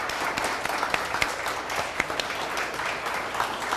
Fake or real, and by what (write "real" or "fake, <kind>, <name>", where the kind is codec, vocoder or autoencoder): real